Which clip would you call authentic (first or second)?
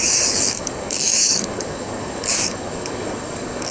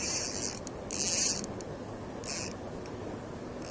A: second